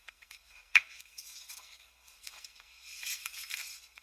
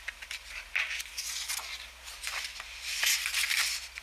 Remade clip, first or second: first